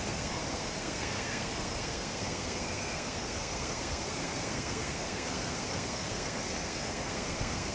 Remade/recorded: remade